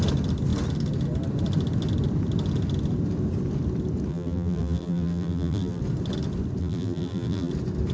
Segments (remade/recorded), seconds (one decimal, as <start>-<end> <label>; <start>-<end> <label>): 0.0-4.1 recorded; 4.1-5.8 remade; 5.8-6.6 recorded; 6.6-7.5 remade; 7.5-7.9 recorded